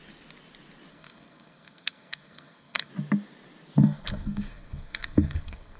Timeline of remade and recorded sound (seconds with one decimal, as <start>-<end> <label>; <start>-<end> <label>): 0.0-0.9 recorded; 0.9-2.9 remade; 2.9-3.8 recorded; 3.8-5.8 remade